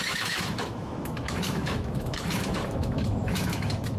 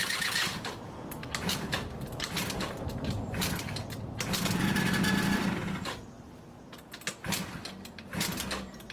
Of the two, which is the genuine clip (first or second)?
second